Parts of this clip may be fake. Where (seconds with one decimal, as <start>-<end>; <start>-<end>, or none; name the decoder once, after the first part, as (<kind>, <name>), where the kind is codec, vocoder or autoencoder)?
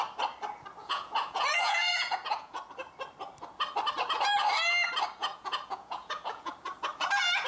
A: 0.8-2.6 (vocoder, Vocos); 5.2-6.5